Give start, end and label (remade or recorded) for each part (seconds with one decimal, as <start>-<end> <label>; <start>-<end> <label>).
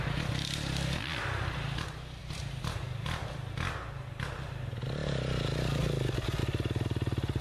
0.0-2.2 recorded; 2.2-3.5 remade; 3.5-5.0 recorded; 5.0-5.8 remade; 5.8-7.4 recorded